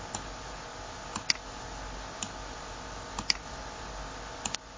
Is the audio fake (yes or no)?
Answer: no